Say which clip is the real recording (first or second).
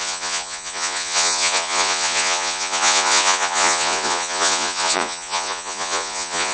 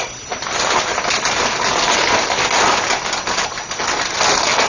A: second